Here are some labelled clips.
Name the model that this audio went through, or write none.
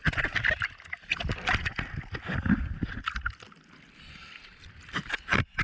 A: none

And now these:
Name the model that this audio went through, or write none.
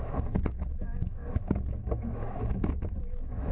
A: autoencoder, DAC-VAE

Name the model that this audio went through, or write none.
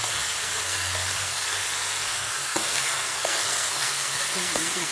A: codec, SNAC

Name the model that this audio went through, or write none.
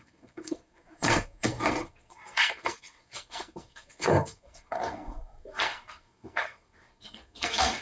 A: codec, SNAC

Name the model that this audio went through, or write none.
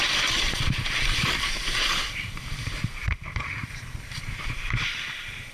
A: vocoder, BigVGAN v2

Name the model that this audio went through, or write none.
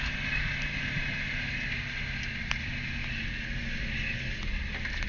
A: none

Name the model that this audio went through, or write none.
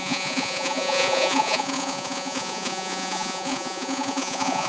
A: vocoder, Vocos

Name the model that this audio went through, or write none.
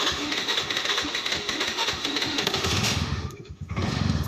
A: autoencoder, DAC-VAE